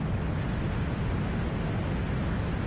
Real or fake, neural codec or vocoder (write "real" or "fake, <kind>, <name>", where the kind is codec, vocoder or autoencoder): real